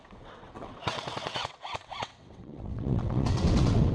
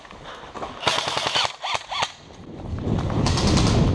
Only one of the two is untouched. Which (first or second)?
second